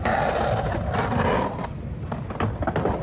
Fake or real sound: real